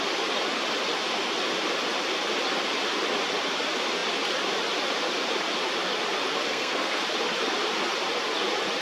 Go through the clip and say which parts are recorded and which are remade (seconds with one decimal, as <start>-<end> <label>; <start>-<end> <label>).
0.0-6.5 recorded; 6.5-7.0 remade; 7.0-8.8 recorded